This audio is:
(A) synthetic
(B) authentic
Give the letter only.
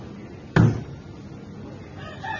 B